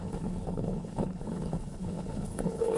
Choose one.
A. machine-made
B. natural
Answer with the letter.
A